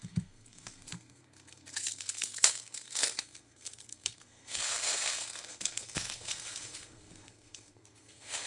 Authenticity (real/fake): fake